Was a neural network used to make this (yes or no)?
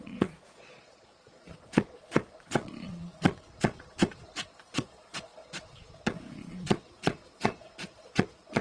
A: yes